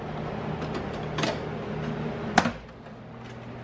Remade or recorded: recorded